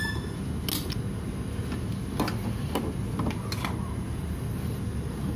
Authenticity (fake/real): real